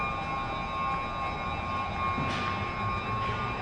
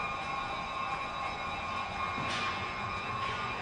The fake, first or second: second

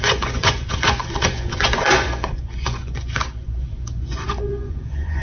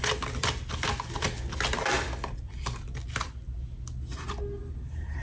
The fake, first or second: first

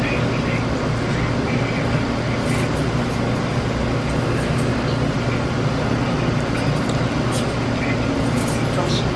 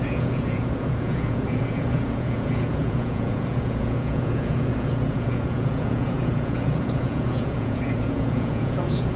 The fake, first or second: second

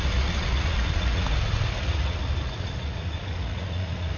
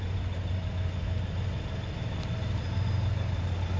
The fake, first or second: first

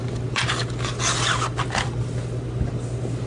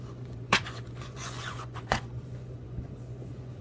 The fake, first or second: second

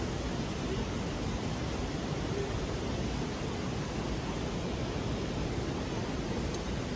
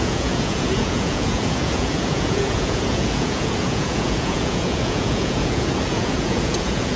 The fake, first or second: second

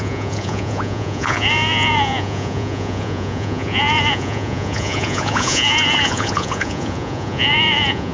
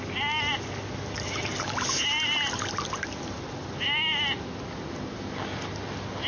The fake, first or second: first